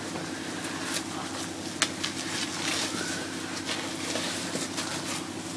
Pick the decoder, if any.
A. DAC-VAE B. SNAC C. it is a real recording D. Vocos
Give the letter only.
C